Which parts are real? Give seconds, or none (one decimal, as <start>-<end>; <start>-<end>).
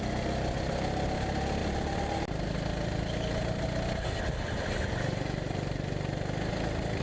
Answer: 0.0-7.0